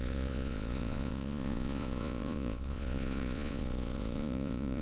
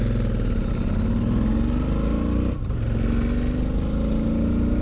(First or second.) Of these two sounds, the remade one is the first